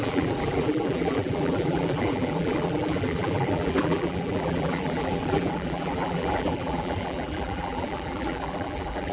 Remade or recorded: remade